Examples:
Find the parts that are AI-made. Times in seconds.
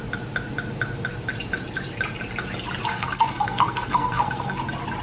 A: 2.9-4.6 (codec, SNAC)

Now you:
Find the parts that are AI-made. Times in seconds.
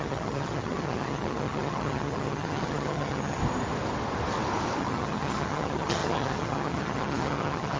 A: 0.0-3.4 (vocoder, HiFi-GAN); 4.8-7.8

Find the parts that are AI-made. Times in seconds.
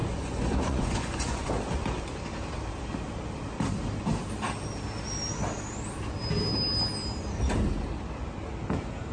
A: 0.0-1.5 (vocoder, Vocos)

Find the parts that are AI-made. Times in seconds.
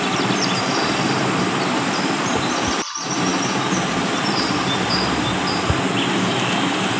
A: 0.0-3.3 (vocoder, BigVGAN v2); 3.9-7.0